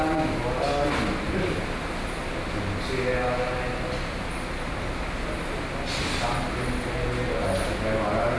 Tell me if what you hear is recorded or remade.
recorded